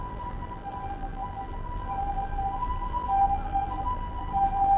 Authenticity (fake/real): fake